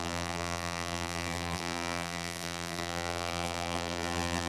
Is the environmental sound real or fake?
fake